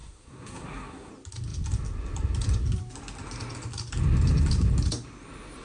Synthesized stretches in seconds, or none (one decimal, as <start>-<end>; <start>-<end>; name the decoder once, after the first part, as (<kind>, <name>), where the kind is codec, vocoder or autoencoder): 0.0-1.1 (codec, SNAC)